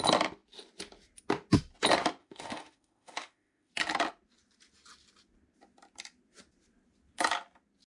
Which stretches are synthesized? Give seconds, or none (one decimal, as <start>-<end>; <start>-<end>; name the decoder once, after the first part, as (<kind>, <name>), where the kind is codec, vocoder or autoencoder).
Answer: 2.2-3.7 (autoencoder, DAC-VAE)